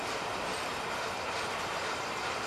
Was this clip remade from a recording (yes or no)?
yes